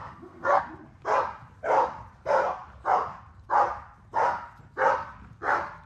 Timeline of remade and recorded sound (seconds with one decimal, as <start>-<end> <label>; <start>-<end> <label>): 0.0-0.6 remade; 0.6-5.9 recorded